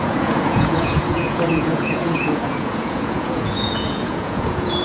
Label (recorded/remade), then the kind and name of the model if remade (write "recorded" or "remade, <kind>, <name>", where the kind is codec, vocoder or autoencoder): remade, vocoder, Vocos